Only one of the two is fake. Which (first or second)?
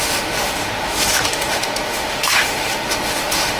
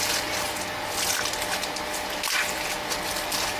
first